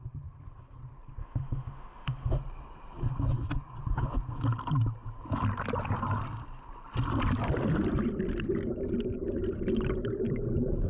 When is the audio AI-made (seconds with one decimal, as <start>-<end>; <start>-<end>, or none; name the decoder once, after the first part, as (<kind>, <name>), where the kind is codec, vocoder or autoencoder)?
1.2-2.3 (autoencoder, DAC-VAE)